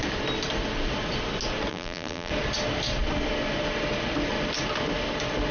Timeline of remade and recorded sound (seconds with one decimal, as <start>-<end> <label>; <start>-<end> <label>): 0.0-1.7 recorded; 1.7-2.3 remade; 2.3-5.5 recorded